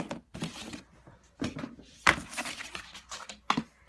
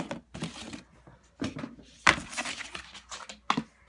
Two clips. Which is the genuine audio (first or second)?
second